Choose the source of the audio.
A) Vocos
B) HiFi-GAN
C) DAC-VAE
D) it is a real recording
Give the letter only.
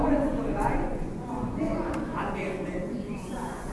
A